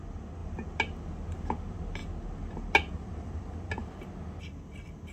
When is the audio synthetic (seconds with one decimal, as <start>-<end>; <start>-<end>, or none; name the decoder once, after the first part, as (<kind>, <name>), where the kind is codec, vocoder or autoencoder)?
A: none